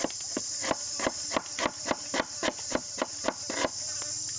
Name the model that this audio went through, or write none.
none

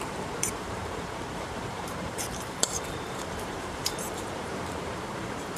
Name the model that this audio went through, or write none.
vocoder, BigVGAN v2